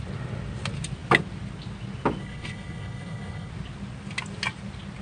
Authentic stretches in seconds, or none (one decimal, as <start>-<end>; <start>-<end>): 0.0-2.2; 3.5-5.0